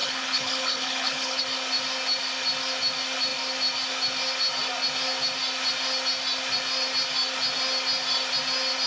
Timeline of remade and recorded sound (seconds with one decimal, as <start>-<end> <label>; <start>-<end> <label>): 0.0-1.4 remade; 1.4-8.9 recorded